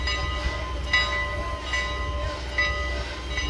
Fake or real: real